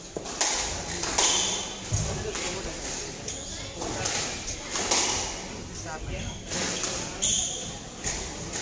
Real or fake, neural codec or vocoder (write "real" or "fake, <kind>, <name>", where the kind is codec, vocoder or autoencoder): real